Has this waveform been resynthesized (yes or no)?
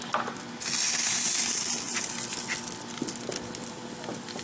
no